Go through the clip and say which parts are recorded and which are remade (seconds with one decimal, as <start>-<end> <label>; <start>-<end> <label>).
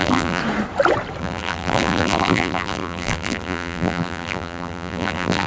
0.0-0.4 remade; 0.4-1.2 recorded; 1.2-5.5 remade